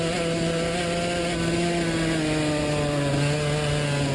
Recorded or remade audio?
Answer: recorded